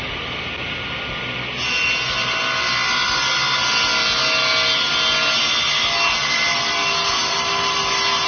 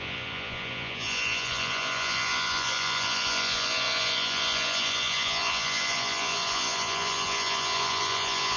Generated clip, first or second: second